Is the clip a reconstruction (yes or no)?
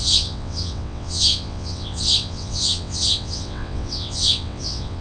yes